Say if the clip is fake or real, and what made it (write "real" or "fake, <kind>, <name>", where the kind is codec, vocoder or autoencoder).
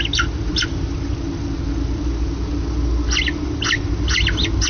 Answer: real